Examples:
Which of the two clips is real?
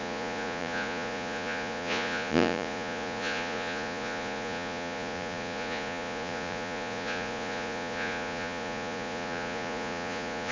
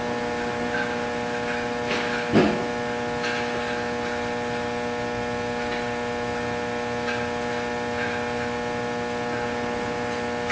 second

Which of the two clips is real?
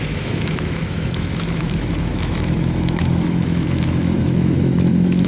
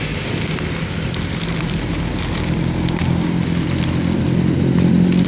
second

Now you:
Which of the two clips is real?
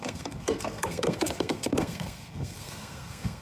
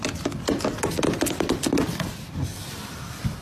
second